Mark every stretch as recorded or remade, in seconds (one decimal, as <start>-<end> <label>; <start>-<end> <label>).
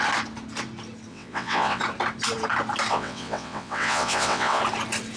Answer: 0.0-1.1 recorded; 1.1-1.8 remade; 1.8-2.9 recorded; 2.9-4.6 remade; 4.6-5.2 recorded